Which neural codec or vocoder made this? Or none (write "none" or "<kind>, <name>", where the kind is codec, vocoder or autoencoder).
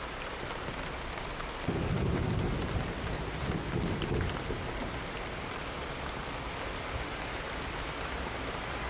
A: none